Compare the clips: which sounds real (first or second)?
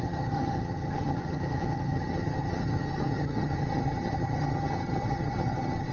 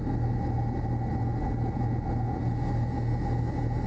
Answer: second